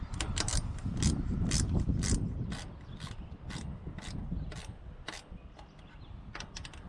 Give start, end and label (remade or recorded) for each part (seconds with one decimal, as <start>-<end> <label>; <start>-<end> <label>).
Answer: 0.0-6.9 recorded